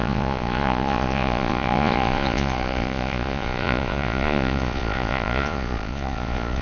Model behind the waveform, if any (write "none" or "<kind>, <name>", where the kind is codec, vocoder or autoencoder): vocoder, Vocos